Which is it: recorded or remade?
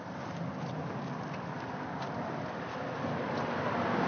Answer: recorded